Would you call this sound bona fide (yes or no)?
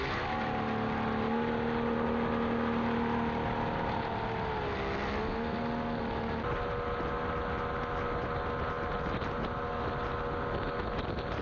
yes